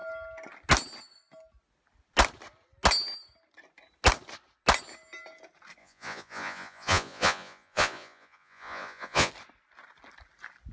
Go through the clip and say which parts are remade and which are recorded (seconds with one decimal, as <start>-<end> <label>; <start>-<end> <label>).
0.0-5.8 recorded; 5.8-9.3 remade; 9.3-10.7 recorded